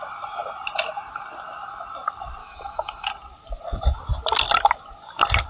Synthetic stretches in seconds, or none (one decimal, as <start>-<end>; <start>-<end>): 2.4-3.1